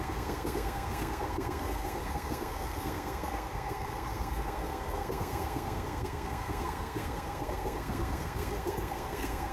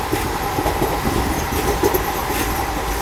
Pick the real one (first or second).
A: second